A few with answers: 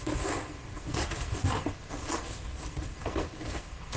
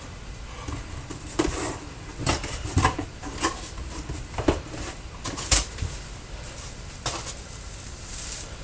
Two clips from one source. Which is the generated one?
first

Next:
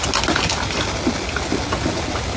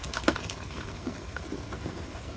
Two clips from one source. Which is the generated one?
second